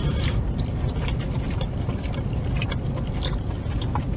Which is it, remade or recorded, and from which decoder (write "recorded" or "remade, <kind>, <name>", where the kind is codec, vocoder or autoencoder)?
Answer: recorded